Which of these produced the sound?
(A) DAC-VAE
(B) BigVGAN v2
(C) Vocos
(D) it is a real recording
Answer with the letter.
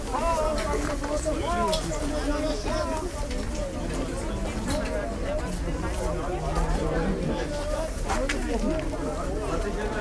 D